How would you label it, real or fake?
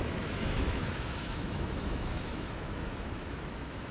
fake